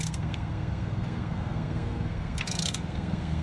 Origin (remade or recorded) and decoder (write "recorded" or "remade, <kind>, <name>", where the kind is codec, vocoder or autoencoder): remade, codec, SNAC